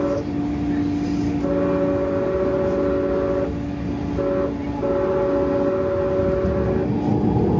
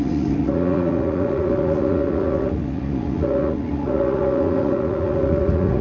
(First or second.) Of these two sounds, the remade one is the second